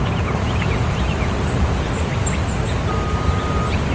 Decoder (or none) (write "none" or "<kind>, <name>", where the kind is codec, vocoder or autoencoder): none